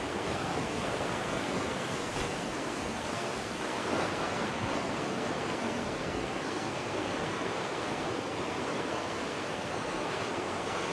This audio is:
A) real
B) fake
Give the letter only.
B